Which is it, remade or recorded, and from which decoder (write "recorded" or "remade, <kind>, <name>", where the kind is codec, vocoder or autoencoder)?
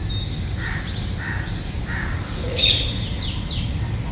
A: recorded